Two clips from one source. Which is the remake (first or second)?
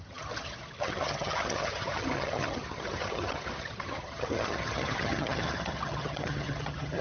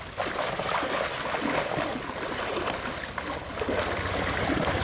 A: first